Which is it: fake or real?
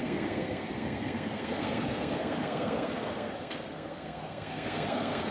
fake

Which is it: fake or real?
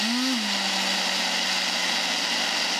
real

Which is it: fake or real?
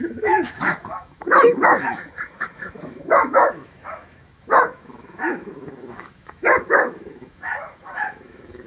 fake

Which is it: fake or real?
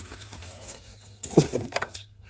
fake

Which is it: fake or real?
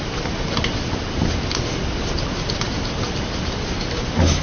real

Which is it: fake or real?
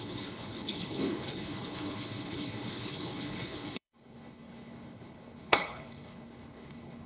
fake